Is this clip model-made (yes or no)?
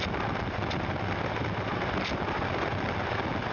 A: no